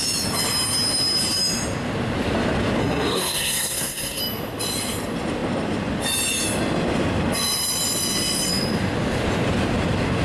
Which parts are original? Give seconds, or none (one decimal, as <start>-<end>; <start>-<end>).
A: 0.0-2.8; 4.2-10.2